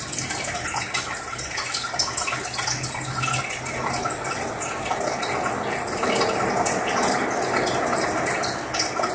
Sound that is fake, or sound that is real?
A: real